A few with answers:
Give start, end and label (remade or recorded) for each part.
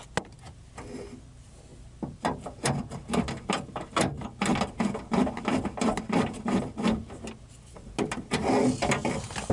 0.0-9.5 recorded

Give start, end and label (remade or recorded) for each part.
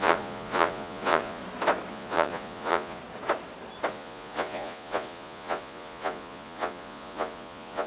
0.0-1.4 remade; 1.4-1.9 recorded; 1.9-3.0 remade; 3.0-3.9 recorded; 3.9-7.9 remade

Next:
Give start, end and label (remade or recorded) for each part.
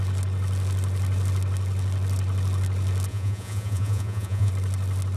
0.0-3.1 recorded; 3.1-4.5 remade; 4.5-5.2 recorded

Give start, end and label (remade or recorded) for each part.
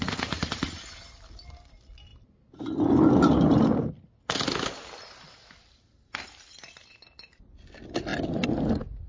0.0-9.1 recorded